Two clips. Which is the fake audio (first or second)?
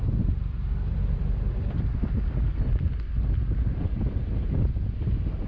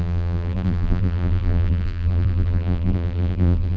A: second